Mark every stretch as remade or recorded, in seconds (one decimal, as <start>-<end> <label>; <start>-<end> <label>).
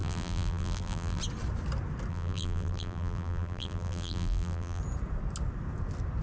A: 0.0-1.2 remade; 1.2-2.1 recorded; 2.1-4.8 remade; 4.8-6.2 recorded